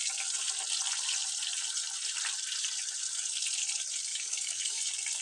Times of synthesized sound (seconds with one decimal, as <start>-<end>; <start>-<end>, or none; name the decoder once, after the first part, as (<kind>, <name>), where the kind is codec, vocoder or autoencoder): 4.1-4.8 (codec, DAC)